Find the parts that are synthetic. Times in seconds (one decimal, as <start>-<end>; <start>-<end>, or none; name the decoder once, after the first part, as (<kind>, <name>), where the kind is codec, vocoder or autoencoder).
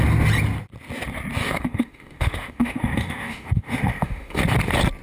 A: 1.4-4.4 (autoencoder, DAC-VAE)